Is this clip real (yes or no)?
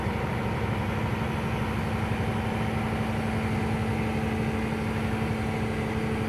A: yes